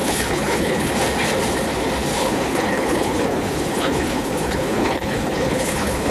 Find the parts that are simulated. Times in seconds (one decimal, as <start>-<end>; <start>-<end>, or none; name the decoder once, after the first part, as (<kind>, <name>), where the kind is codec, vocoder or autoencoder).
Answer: 0.0-0.9 (codec, HILCodec); 2.1-6.1